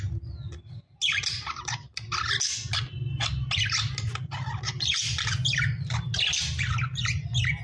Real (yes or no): yes